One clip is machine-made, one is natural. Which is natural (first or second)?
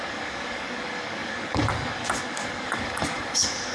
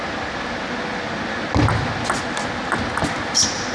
second